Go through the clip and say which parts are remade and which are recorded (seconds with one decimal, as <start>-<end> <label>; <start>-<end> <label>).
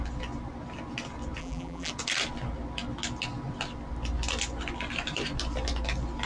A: 0.0-1.4 recorded; 1.4-1.9 remade; 1.9-6.3 recorded